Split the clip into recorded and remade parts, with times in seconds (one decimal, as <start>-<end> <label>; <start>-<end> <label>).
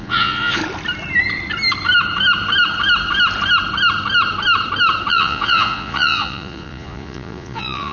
0.0-0.6 remade; 0.6-5.1 recorded; 5.1-7.9 remade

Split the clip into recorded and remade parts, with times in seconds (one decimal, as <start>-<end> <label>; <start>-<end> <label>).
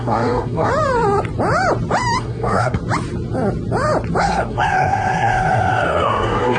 0.0-0.7 remade; 0.7-2.2 recorded; 2.2-2.8 remade; 2.8-4.2 recorded; 4.2-6.6 remade